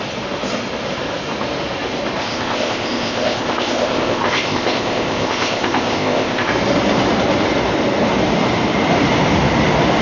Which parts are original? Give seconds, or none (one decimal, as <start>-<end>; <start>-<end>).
0.0-2.2; 6.5-10.0